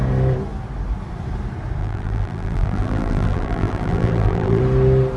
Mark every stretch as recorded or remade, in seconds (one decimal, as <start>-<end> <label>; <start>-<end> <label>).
0.0-1.8 recorded; 1.8-4.6 remade; 4.6-5.2 recorded